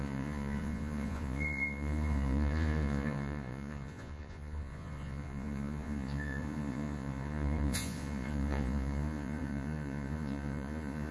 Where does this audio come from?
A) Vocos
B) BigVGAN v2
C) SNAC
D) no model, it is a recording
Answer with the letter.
A